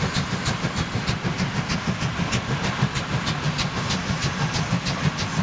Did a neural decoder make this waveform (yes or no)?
no